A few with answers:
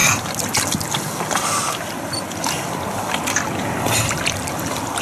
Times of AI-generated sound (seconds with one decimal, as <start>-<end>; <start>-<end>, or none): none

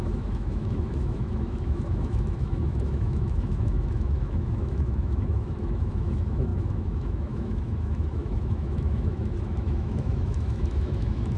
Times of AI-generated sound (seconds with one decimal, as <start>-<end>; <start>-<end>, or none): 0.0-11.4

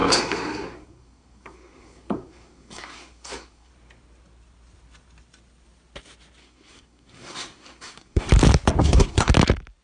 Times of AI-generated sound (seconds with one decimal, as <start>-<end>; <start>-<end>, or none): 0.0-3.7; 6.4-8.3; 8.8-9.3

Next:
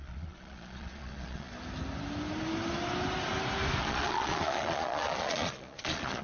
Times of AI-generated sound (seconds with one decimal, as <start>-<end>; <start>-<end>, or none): 0.0-1.5; 3.8-6.2